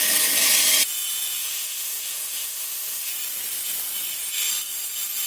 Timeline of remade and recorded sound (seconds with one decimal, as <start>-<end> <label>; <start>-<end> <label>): 0.0-1.4 recorded; 1.4-3.1 remade; 3.1-5.3 recorded